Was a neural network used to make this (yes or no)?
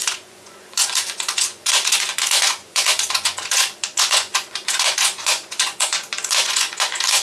yes